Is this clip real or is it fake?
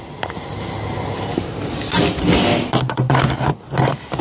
real